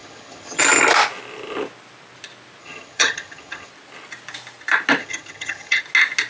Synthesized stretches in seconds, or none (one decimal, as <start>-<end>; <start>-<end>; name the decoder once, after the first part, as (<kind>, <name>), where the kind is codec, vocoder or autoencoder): 0.0-0.6 (vocoder, HiFi-GAN); 2.6-3.7; 5.0-5.8